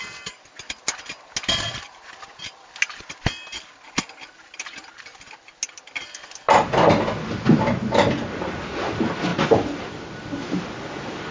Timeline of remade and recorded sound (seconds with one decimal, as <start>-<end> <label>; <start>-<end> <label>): 0.0-9.3 recorded; 9.3-9.9 remade; 9.9-11.3 recorded